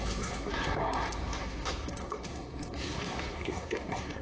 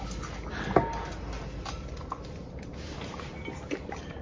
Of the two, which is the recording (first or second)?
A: second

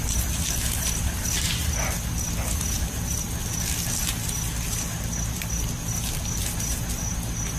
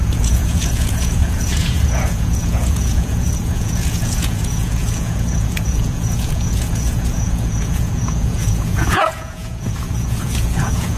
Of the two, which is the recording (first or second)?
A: first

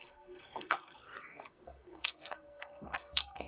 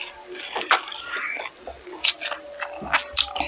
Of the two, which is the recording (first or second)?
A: second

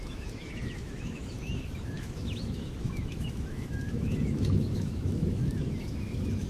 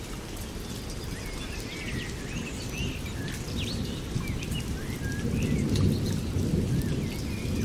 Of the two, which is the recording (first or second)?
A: second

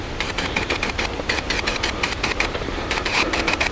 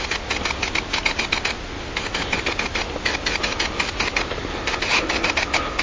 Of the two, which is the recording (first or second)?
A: second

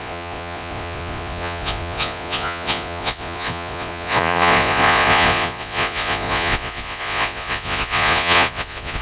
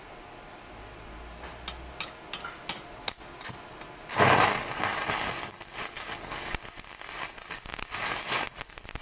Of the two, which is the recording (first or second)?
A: second